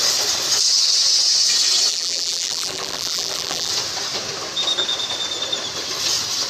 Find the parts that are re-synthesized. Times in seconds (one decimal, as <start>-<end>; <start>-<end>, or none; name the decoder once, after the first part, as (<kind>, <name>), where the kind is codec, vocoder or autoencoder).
1.9-3.7 (vocoder, BigVGAN v2)